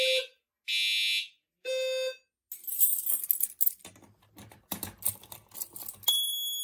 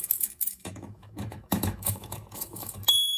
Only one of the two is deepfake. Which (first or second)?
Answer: second